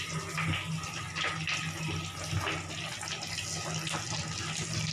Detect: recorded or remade recorded